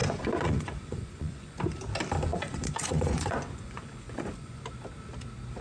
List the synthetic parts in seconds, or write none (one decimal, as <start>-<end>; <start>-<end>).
0.0-1.6; 2.3-4.6